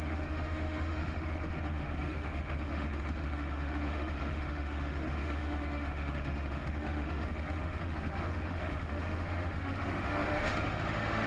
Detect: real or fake fake